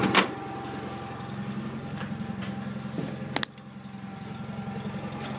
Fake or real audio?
real